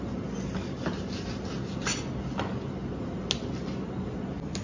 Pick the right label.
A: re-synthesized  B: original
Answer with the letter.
B